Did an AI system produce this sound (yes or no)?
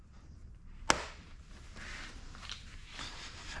no